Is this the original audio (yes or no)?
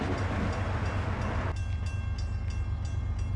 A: yes